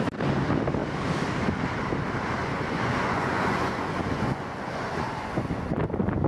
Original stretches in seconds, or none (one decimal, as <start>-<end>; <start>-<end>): 0.0-2.4; 5.8-6.3